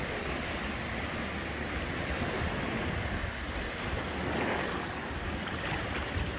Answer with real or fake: real